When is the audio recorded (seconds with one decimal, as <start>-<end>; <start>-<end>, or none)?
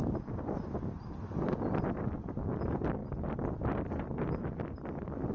0.0-5.3